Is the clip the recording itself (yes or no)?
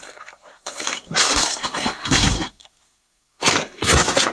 no